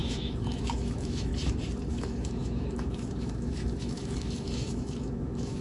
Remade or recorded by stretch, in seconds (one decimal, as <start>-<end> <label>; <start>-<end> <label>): 0.0-1.3 remade; 1.3-1.9 recorded; 1.9-5.6 remade